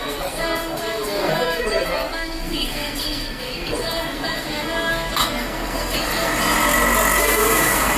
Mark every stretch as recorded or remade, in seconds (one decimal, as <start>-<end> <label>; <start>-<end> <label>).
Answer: 0.0-6.3 remade; 6.3-7.2 recorded; 7.2-8.0 remade